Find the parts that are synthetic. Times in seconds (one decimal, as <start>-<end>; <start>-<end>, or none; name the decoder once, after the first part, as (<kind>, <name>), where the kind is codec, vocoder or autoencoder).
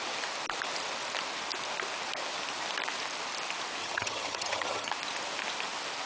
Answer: 3.8-4.9 (vocoder, HiFi-GAN)